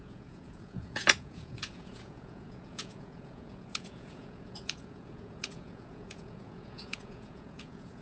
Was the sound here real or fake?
fake